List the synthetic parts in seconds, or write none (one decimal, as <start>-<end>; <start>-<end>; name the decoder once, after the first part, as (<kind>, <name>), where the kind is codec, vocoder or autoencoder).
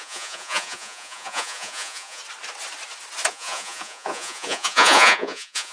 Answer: 0.0-2.2 (vocoder, Vocos); 3.3-5.7